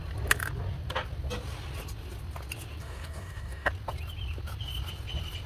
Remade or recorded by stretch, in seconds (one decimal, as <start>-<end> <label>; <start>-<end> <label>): 0.0-2.8 recorded; 2.8-3.7 remade; 3.7-5.5 recorded